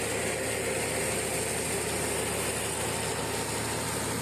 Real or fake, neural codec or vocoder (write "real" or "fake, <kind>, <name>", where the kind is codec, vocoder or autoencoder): real